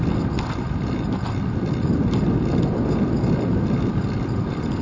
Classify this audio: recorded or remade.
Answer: recorded